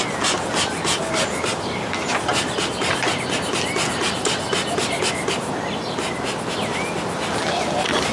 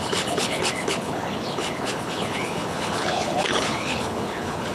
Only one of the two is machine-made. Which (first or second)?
second